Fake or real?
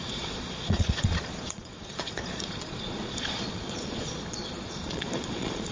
fake